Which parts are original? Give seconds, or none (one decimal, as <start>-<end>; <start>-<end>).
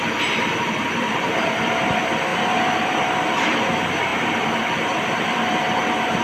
2.3-2.8